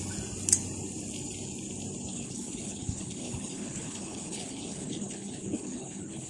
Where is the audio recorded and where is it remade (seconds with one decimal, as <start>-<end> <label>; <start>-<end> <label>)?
0.0-2.1 recorded; 2.1-6.3 remade